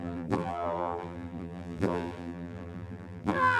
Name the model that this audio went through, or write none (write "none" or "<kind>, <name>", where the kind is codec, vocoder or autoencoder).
vocoder, BigVGAN v2